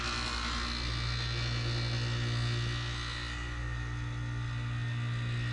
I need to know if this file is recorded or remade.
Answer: recorded